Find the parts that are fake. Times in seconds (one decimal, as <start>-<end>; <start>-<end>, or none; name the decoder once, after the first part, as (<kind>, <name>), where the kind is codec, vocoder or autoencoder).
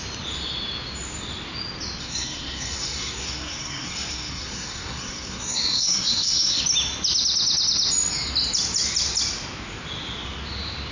2.0-6.6 (codec, SNAC)